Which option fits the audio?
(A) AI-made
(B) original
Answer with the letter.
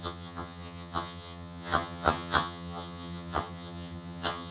A